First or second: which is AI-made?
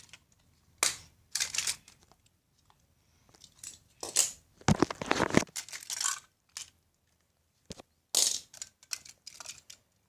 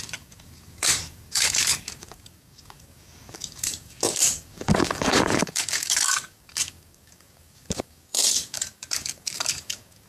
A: second